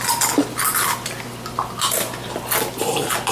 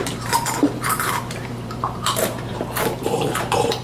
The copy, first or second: second